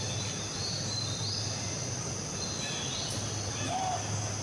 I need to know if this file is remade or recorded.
recorded